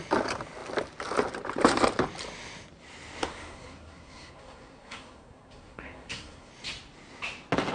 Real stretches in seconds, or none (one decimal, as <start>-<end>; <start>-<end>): 0.0-3.3; 6.5-7.7